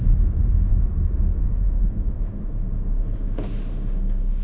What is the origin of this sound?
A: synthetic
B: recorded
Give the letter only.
A